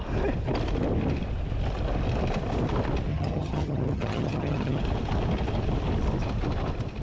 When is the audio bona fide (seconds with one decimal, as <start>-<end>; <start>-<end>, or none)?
0.0-3.1; 4.8-7.0